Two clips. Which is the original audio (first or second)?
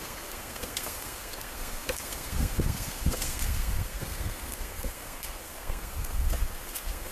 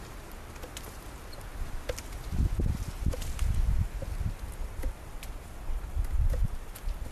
second